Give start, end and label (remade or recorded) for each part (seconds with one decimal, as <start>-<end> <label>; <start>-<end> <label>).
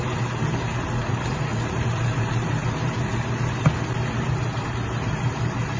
0.0-5.8 remade